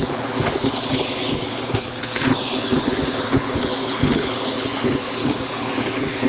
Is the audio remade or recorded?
remade